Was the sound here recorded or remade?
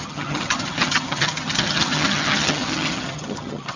remade